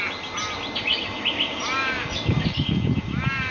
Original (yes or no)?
yes